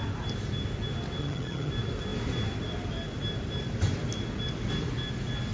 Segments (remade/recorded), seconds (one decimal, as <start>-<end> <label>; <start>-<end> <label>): 0.0-1.2 recorded; 1.2-1.7 remade; 1.7-5.5 recorded